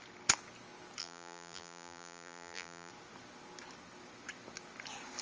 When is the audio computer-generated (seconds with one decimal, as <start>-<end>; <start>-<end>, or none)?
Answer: 1.0-2.9